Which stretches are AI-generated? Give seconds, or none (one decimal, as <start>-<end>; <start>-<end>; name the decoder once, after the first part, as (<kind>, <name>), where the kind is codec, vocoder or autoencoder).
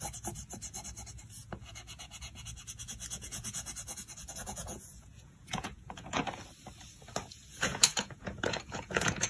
1.4-6.2 (vocoder, Vocos); 7.3-9.3